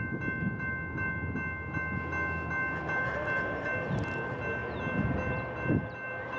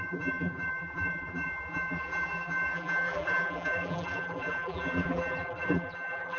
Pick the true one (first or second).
first